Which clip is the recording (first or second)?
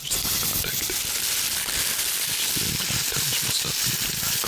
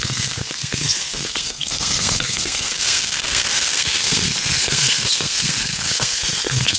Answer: first